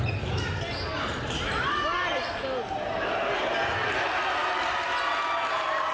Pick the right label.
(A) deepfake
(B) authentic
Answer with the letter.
B